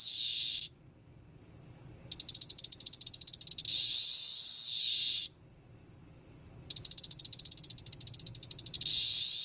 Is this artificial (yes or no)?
no